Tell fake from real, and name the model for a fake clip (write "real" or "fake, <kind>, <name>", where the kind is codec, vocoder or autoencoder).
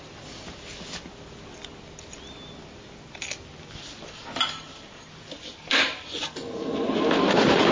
real